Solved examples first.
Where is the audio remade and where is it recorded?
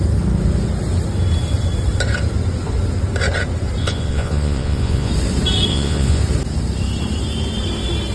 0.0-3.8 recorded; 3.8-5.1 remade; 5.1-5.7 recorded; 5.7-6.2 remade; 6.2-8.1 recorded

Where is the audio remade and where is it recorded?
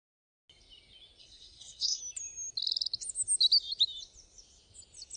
0.0-1.2 recorded; 1.2-2.0 remade; 2.0-5.2 recorded